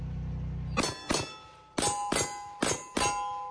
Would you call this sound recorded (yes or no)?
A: yes